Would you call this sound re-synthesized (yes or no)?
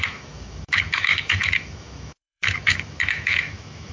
yes